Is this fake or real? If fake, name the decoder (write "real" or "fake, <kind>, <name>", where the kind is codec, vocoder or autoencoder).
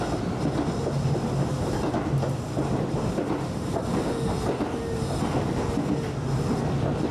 real